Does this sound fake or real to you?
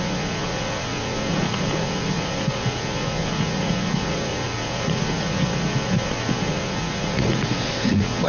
fake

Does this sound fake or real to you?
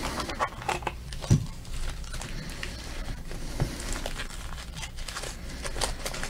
real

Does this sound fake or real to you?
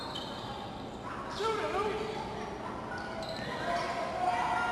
real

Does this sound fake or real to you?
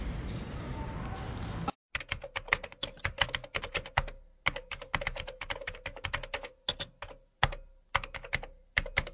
real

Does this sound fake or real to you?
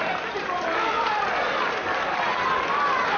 real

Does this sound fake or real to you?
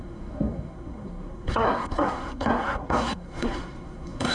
fake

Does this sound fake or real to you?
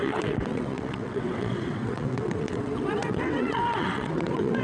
fake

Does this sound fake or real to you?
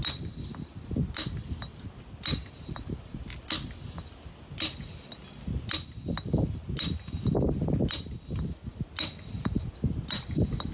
real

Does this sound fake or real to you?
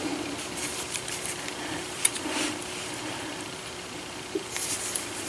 fake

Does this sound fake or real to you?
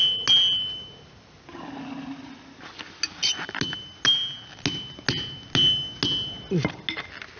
real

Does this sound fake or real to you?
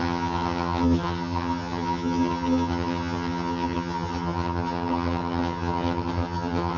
fake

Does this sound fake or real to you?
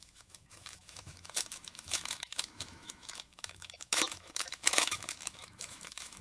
fake